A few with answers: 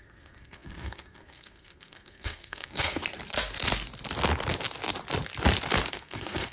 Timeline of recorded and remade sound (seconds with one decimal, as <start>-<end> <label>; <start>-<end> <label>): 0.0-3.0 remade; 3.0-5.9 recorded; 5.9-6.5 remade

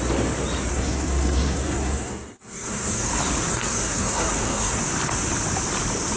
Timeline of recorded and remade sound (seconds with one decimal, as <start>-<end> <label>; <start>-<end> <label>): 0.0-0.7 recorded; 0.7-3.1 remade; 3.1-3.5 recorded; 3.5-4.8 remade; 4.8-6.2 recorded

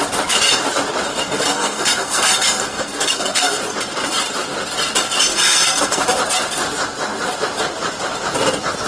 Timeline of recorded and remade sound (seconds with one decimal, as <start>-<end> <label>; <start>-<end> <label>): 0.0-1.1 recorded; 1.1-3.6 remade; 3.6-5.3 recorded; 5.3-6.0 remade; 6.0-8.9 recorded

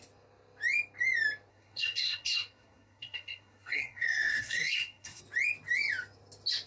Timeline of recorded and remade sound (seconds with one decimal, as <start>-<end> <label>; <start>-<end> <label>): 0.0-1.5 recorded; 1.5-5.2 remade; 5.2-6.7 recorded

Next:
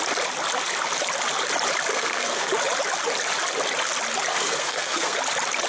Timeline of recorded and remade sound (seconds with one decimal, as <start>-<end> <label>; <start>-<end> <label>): 0.0-1.9 recorded; 1.9-2.5 remade; 2.5-4.3 recorded; 4.3-5.2 remade; 5.2-5.7 recorded

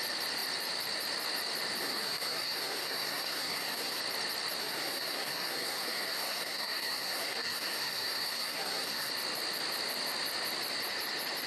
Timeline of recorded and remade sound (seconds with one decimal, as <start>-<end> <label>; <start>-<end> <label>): 0.0-1.8 recorded; 1.8-4.0 remade; 4.0-4.6 recorded; 4.6-9.1 remade; 9.1-11.5 recorded